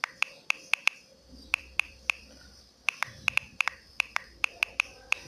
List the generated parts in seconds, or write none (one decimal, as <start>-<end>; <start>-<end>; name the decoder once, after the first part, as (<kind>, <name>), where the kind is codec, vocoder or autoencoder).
1.5-4.7 (vocoder, BigVGAN v2)